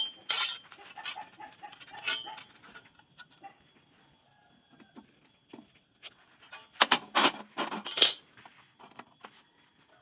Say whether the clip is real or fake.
real